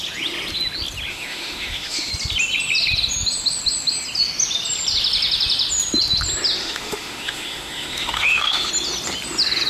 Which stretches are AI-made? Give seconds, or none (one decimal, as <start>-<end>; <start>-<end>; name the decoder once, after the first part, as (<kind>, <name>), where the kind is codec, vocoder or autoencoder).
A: 1.1-2.1 (autoencoder, DAC-VAE); 6.6-8.7